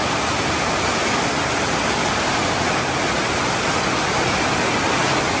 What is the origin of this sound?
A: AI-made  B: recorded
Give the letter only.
B